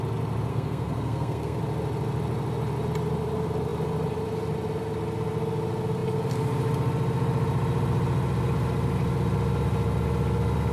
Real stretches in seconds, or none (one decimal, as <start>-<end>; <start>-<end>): 0.0-0.5; 1.6-10.7